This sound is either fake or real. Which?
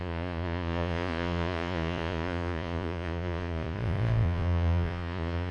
fake